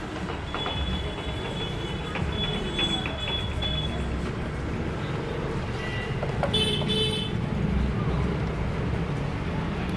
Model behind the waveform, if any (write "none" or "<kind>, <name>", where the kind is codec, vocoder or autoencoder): none